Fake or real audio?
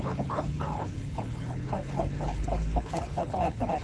fake